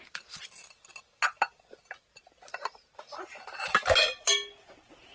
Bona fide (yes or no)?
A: yes